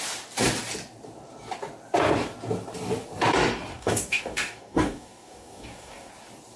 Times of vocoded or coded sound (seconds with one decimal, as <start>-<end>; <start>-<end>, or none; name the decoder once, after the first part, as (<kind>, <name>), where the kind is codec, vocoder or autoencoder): 3.7-6.1 (codec, DAC)